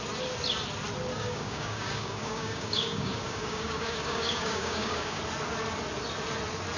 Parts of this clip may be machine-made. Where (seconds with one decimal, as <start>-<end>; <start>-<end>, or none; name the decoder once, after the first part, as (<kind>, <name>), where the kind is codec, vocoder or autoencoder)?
1.1-5.2 (codec, DAC)